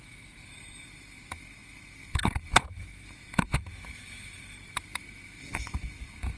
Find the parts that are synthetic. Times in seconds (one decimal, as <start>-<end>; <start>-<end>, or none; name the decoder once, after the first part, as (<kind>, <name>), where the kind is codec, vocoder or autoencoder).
0.0-6.4 (autoencoder, DAC-VAE)